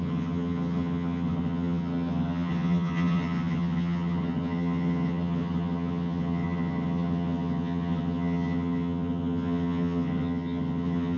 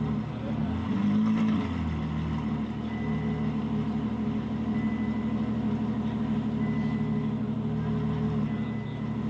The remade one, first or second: first